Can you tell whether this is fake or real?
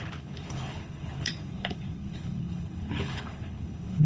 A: fake